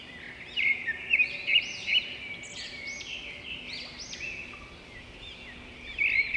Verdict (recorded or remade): recorded